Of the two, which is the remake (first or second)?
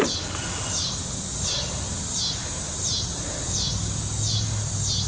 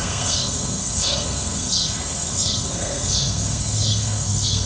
second